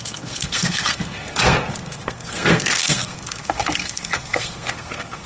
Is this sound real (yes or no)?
no